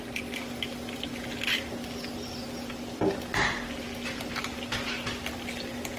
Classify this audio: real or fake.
real